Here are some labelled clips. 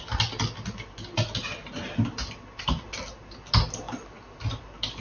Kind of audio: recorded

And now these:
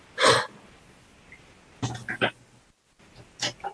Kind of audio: recorded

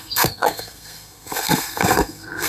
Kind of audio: remade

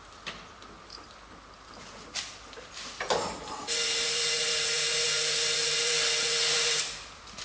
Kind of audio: recorded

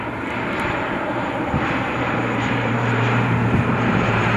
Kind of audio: remade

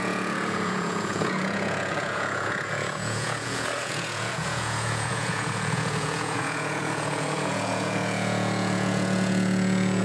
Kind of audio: remade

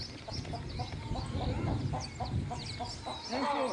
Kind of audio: recorded